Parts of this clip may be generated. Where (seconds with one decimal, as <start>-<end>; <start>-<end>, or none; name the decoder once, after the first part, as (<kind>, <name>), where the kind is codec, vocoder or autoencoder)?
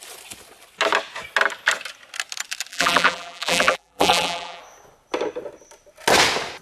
2.7-4.6 (vocoder, BigVGAN v2)